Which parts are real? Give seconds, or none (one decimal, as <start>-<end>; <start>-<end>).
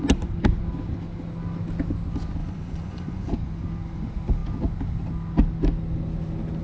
0.0-2.4; 3.3-6.6